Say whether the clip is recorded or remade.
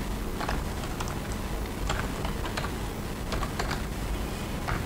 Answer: recorded